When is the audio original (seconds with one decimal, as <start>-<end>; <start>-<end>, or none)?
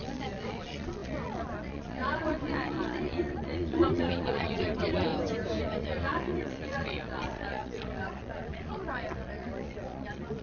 5.1-5.6